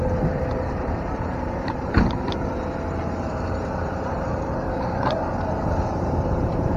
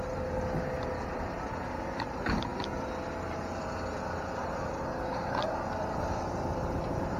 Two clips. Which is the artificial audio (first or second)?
first